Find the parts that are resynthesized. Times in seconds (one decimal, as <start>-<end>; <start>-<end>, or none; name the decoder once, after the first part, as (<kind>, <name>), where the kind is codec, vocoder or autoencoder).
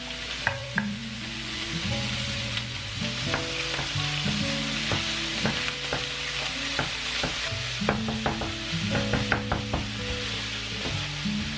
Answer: 0.6-2.9 (vocoder, Vocos)